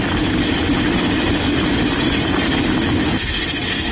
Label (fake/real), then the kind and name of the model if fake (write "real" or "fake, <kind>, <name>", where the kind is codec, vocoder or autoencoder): real